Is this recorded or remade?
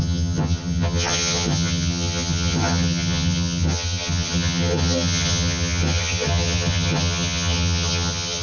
remade